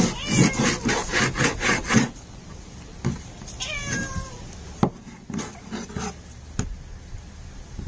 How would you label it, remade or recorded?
recorded